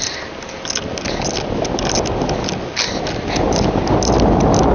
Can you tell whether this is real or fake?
real